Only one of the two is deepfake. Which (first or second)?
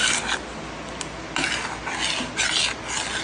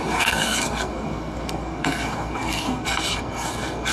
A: second